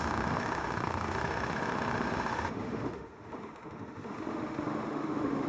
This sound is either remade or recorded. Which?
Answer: remade